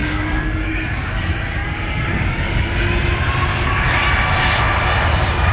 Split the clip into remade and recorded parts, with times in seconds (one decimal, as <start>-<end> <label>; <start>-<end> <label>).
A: 0.0-1.2 remade; 1.2-1.6 recorded; 1.6-2.6 remade; 2.6-3.5 recorded; 3.5-4.1 remade; 4.1-5.5 recorded